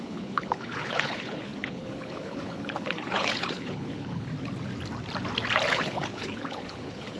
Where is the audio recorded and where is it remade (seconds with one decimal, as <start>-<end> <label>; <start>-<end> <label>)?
0.0-4.3 remade; 4.3-5.7 recorded; 5.7-7.2 remade